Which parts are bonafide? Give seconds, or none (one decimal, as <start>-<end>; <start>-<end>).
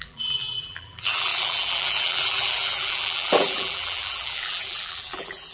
none